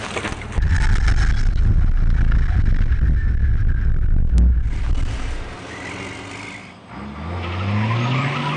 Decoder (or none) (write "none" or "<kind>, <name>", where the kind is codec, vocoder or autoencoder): none